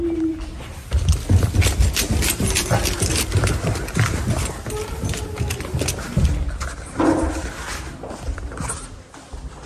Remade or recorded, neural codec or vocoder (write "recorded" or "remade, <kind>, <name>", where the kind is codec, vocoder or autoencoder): recorded